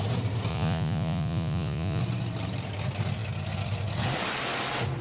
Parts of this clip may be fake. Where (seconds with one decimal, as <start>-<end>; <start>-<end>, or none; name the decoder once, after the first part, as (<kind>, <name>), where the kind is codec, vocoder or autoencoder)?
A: 0.5-2.0 (vocoder, Vocos)